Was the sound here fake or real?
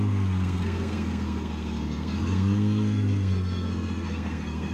fake